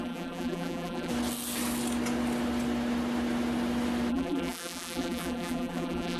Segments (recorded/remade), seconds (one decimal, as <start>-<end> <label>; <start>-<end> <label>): 0.0-1.1 remade; 1.1-4.1 recorded; 4.1-6.2 remade